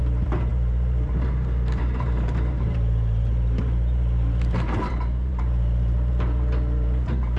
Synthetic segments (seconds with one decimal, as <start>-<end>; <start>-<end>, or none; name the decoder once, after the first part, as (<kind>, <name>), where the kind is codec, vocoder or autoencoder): 0.0-7.4 (vocoder, BigVGAN v2)